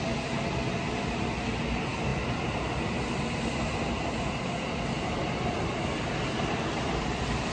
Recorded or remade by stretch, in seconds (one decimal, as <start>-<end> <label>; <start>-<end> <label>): 0.0-7.5 recorded